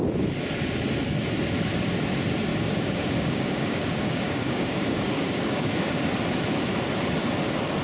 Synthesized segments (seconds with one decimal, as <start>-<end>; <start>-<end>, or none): 2.5-6.1